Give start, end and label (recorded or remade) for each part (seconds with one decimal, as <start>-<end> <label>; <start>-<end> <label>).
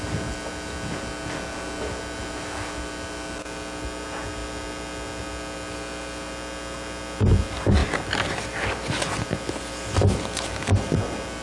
0.0-11.4 recorded